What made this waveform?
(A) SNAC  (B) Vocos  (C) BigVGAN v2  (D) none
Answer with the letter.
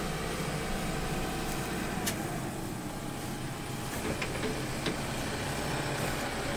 D